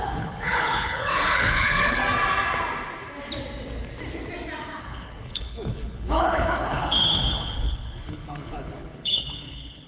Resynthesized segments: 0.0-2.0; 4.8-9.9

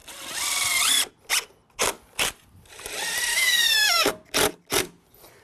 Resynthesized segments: 3.3-4.1

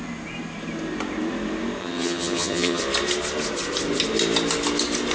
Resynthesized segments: 1.8-2.8

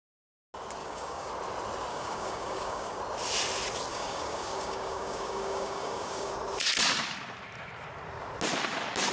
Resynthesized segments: 0.8-1.3; 1.9-3.0; 3.9-6.3

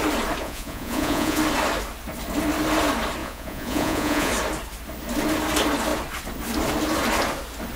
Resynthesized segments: 0.4-1.4; 3.2-4.3

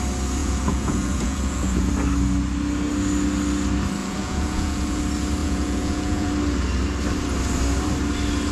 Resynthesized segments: 0.4-1.9; 4.0-5.0; 5.4-6.3

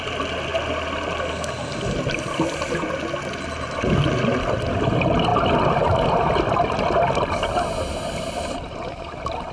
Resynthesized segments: none

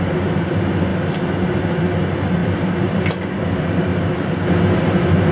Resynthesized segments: 2.4-3.0; 3.9-4.4